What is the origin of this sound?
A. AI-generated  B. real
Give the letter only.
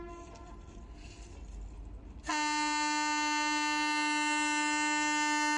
B